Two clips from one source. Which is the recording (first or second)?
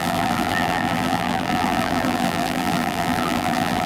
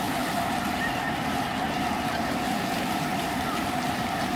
second